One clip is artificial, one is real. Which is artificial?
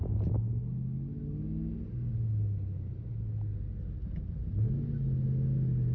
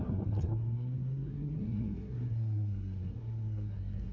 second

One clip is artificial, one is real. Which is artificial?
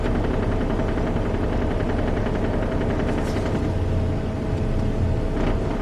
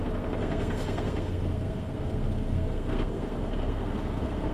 second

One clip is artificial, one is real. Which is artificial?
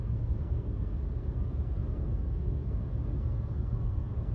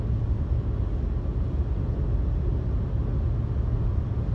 first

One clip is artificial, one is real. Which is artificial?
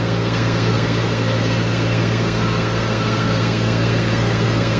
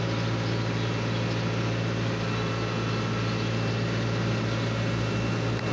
first